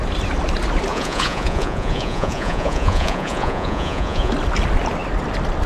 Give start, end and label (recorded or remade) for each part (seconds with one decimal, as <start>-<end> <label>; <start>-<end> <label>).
0.0-0.9 recorded; 0.9-4.3 remade; 4.3-5.7 recorded